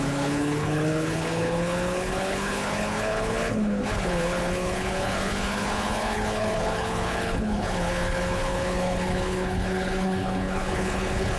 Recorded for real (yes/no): no